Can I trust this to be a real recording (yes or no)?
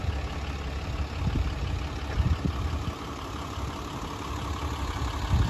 yes